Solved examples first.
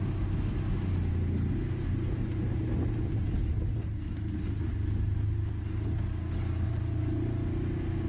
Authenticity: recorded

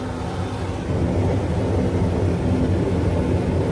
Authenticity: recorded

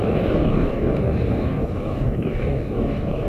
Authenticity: remade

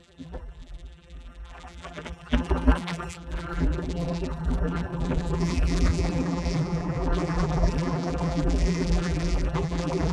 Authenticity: remade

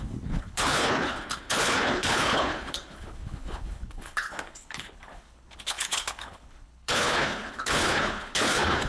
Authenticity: remade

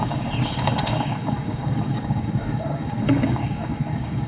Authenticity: remade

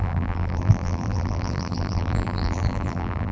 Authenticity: remade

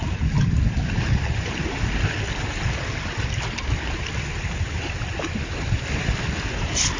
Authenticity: recorded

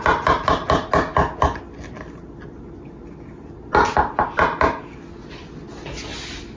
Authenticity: recorded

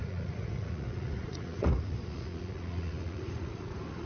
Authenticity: remade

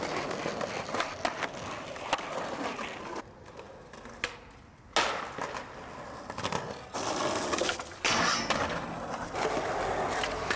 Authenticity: recorded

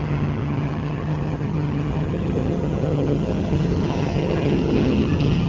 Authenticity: remade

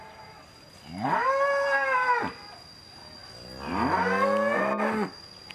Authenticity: recorded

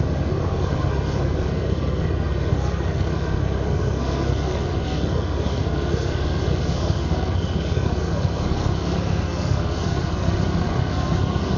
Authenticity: remade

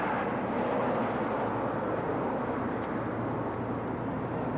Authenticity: recorded